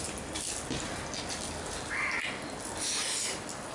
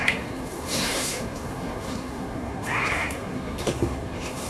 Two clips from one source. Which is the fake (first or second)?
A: second